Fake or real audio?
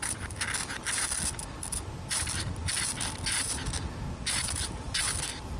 real